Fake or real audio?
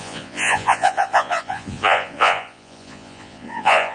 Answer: fake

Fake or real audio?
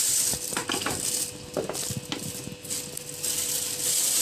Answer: real